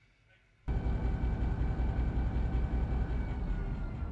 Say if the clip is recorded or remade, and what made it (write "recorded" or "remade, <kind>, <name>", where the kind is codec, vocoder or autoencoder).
recorded